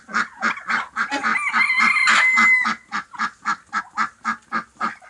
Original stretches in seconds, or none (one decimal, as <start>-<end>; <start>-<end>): 0.0-5.1